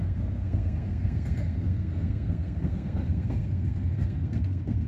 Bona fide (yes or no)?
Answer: no